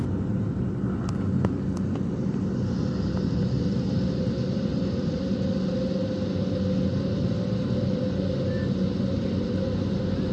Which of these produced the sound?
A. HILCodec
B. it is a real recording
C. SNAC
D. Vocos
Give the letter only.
B